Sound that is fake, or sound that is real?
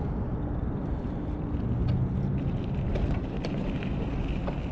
real